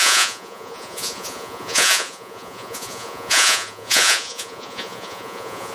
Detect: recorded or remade remade